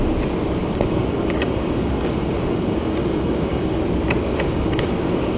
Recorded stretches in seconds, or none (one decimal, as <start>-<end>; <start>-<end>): 0.0-0.6; 3.8-4.2